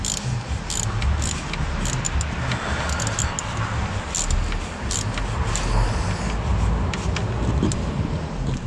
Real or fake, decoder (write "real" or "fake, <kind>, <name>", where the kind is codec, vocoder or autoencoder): real